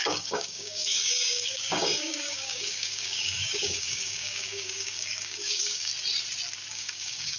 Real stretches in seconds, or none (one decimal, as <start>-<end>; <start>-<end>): 5.9-6.7